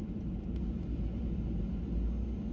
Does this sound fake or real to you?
real